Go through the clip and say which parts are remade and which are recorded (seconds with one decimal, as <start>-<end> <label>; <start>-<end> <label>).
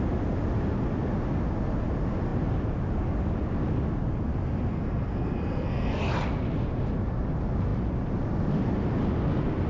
0.0-4.7 recorded; 4.7-6.0 remade; 6.0-9.7 recorded